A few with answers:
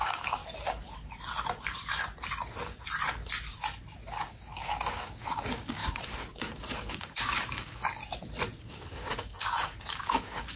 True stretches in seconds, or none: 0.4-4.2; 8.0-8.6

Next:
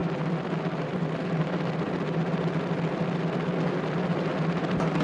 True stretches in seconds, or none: 0.0-5.0